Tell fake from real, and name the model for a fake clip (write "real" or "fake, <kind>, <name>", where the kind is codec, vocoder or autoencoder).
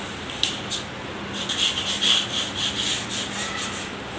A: real